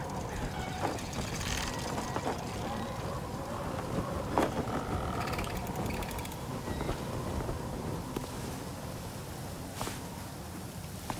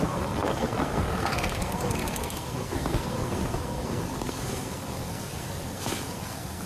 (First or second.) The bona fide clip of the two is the first